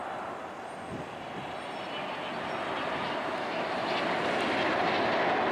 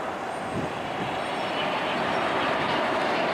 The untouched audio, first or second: first